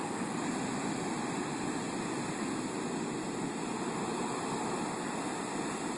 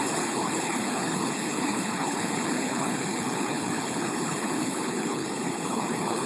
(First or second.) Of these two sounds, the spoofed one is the second